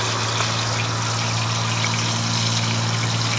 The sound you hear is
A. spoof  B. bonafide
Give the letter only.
B